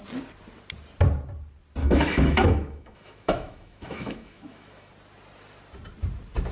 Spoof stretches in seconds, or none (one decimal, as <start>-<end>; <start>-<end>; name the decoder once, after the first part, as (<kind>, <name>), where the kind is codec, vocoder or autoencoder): 1.8-4.9 (autoencoder, DAC-VAE)